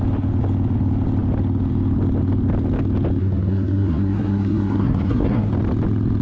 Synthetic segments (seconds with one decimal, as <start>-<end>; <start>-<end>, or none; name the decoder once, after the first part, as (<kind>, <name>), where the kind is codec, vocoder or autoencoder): 3.2-5.5 (codec, SNAC)